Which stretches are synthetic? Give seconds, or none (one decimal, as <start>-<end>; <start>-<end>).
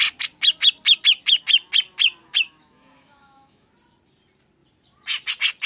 2.2-3.7